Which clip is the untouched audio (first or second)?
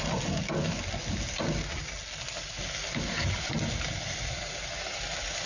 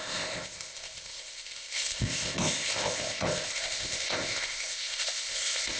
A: first